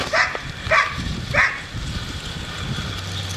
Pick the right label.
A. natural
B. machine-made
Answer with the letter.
A